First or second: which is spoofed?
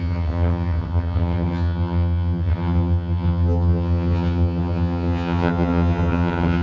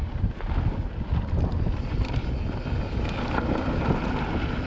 first